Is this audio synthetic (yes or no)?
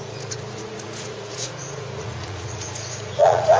yes